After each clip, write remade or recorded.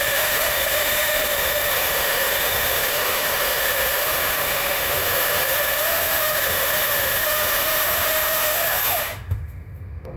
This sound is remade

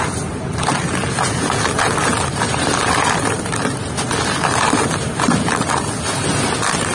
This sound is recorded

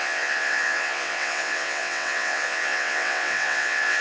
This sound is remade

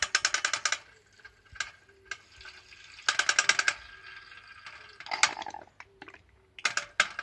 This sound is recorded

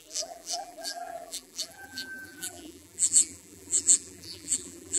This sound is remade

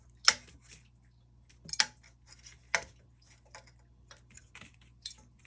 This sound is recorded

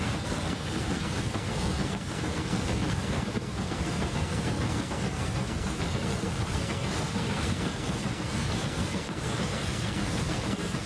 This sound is remade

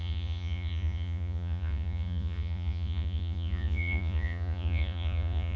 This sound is remade